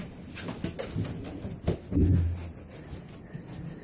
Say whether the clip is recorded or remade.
recorded